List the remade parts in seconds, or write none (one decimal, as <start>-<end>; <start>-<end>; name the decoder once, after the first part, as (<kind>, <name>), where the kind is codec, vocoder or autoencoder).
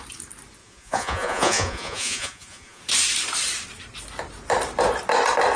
0.6-2.8 (vocoder, Vocos)